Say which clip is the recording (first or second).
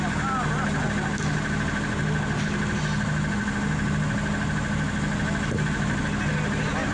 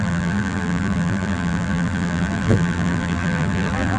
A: first